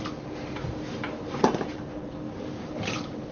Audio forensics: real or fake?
fake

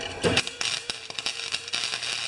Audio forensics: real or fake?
real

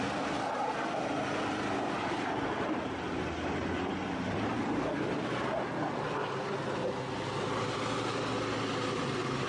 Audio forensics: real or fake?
real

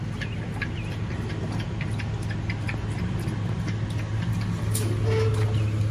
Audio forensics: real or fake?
real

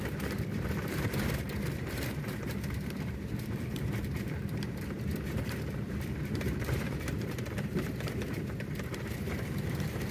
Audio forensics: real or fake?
fake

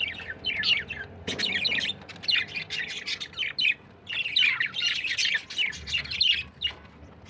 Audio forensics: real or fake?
real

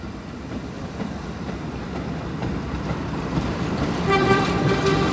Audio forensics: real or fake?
fake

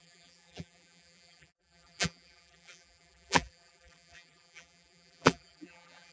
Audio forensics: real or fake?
fake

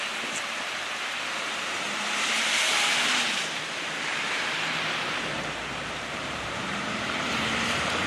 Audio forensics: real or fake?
fake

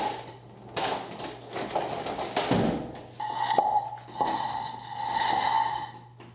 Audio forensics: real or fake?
real